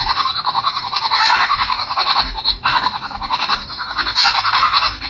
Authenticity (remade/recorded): remade